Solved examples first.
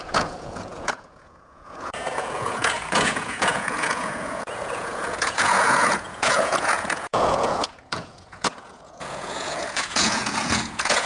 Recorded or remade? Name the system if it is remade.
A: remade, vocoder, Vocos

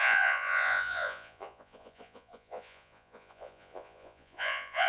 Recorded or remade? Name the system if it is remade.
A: remade, vocoder, Vocos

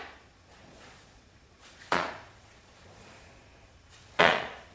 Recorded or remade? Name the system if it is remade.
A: remade, vocoder, Vocos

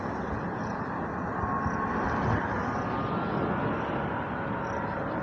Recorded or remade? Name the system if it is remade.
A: recorded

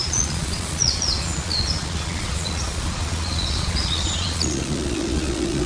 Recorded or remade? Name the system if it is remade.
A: remade, vocoder, Vocos